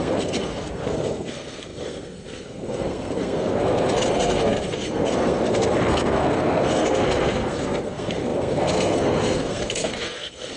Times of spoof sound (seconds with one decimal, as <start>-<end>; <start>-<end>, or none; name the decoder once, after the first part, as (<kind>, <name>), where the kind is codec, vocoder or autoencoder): 0.0-10.6 (codec, SNAC)

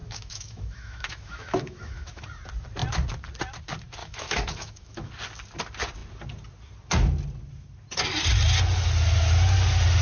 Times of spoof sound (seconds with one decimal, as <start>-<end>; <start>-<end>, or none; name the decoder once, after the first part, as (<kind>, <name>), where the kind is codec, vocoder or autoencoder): 0.0-2.2 (autoencoder, DAC-VAE); 4.0-5.1

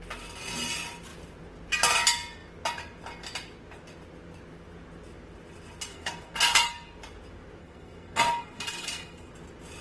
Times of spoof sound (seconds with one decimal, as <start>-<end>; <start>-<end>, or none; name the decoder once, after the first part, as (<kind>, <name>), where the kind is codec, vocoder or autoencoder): 5.9-6.7 (codec, SNAC); 7.6-9.3

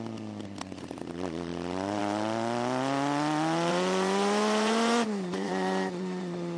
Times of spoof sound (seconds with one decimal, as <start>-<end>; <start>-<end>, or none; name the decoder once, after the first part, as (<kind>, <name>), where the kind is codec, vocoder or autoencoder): 3.7-6.6 (vocoder, Vocos)

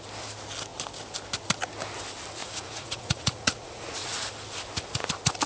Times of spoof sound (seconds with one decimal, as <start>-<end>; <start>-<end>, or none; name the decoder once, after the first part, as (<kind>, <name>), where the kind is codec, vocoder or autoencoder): 2.4-4.3 (vocoder, Vocos)

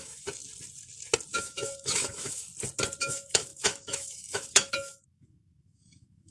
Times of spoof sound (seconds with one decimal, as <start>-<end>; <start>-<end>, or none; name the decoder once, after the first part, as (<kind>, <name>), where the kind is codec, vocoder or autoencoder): 0.0-0.4 (autoencoder, DAC-VAE); 1.3-2.5; 3.0-6.3

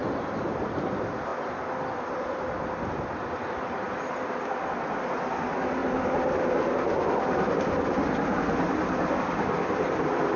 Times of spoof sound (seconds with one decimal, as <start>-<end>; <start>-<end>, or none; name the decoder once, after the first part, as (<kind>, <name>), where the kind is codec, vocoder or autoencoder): none